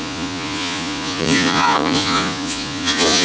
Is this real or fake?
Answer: fake